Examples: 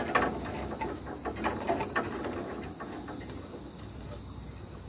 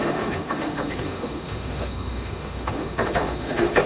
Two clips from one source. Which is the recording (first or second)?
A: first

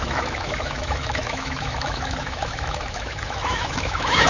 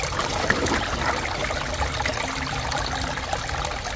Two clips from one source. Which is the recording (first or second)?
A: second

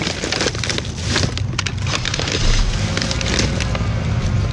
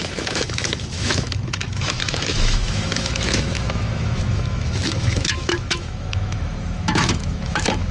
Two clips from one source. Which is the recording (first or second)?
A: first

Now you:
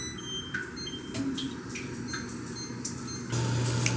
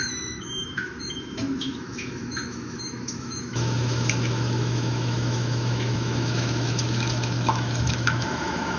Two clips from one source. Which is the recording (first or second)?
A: first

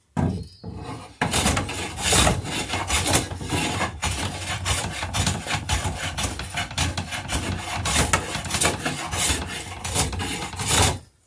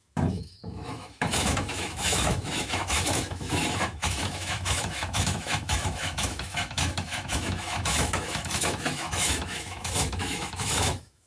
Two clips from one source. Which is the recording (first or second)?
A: first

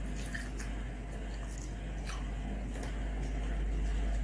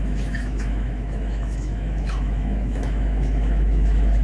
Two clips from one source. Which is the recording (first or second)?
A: first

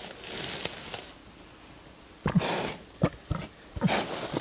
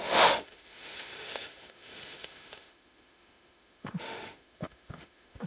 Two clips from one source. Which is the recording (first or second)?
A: first